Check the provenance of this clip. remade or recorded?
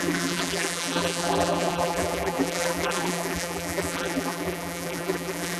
remade